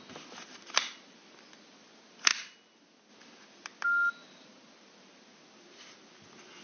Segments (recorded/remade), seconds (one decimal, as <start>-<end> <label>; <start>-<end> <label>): 0.0-6.6 recorded